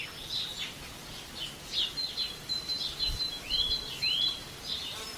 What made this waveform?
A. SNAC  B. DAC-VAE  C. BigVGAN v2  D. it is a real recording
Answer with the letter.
D